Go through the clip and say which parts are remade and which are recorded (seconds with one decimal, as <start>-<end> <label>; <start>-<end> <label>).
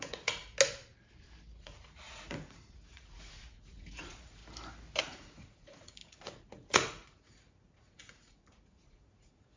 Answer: 0.0-0.4 remade; 0.4-1.6 recorded; 1.6-4.4 remade; 4.4-5.0 recorded; 5.0-9.6 remade